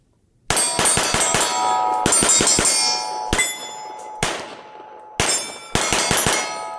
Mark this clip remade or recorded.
recorded